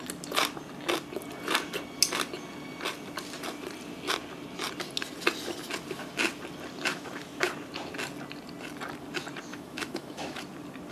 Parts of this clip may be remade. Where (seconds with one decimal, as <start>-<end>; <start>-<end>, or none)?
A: 6.9-7.5; 9.5-10.4